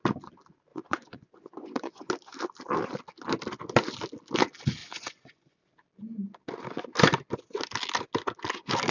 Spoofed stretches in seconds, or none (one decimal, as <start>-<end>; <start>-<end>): 0.7-2.1; 4.8-5.6